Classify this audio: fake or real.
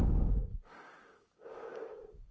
fake